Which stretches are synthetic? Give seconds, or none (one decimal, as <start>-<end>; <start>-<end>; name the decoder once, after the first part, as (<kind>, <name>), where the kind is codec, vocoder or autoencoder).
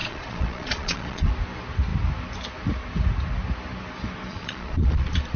0.0-1.3 (vocoder, Vocos); 4.3-5.4